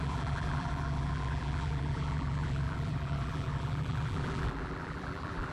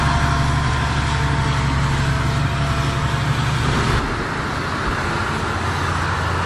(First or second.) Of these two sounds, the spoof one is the first